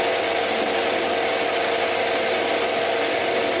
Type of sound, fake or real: real